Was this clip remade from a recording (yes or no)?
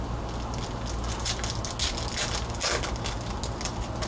no